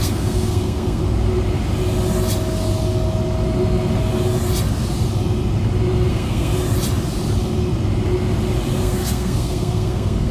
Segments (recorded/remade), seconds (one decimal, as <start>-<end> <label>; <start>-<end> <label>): 0.0-1.0 remade; 1.0-6.1 recorded; 6.1-6.5 remade; 6.5-8.8 recorded; 8.8-10.3 remade